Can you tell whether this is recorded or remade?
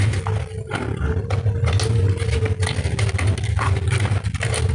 recorded